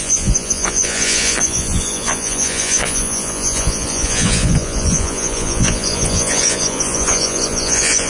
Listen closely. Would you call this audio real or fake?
fake